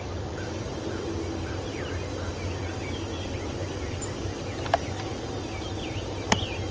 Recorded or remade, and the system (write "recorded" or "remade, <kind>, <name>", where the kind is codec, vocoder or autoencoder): recorded